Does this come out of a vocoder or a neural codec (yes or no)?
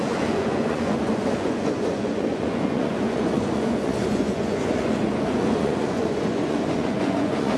yes